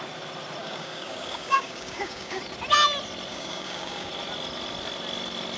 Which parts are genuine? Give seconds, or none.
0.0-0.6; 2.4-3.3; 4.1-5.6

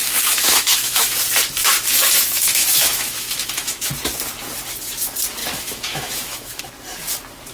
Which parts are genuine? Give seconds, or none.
1.1-1.6; 3.9-5.4; 6.6-7.5

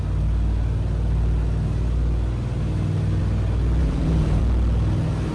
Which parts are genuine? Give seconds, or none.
0.0-3.8; 4.4-5.3

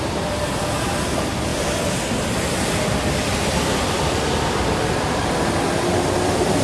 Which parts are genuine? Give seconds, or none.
0.0-6.6